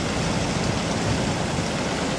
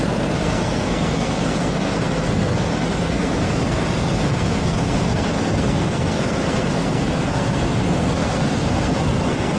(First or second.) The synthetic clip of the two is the second